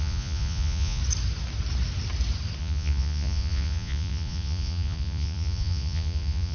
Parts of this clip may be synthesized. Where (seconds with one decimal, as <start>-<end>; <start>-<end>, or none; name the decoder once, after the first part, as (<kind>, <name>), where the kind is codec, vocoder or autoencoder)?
0.0-1.0 (vocoder, Vocos); 2.6-6.5